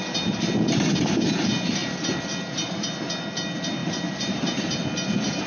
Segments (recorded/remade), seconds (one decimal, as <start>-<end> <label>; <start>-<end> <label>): 0.0-3.8 recorded; 3.8-4.7 remade; 4.7-5.5 recorded